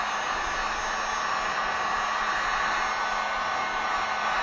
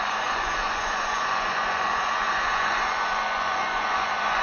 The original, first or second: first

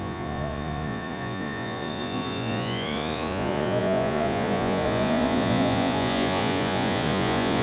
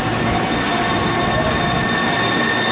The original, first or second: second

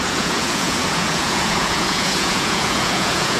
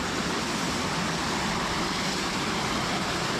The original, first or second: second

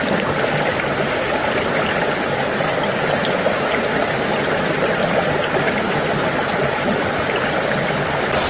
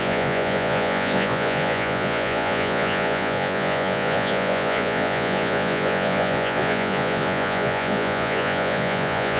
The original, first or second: first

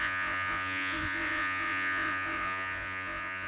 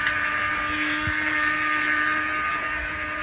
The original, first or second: second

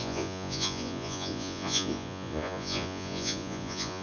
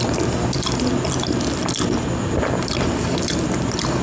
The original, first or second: second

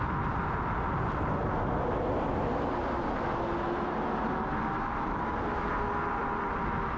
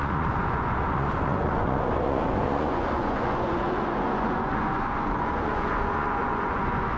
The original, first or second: first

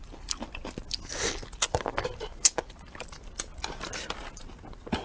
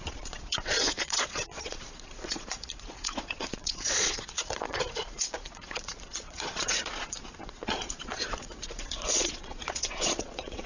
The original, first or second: first